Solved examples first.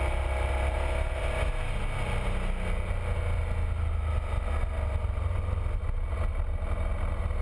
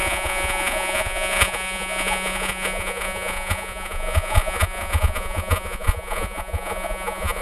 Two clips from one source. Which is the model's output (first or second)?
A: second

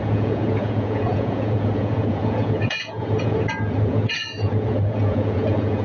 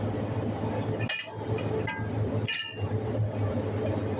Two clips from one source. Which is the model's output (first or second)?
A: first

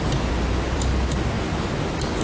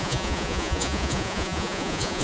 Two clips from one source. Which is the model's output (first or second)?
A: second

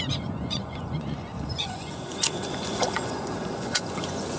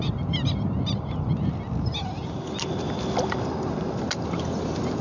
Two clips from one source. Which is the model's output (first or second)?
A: first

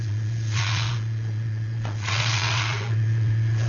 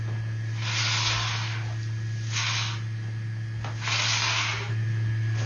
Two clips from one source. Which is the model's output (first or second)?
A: first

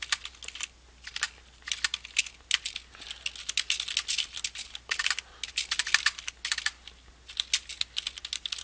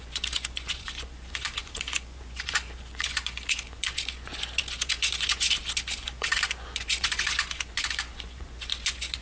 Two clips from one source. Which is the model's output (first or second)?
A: second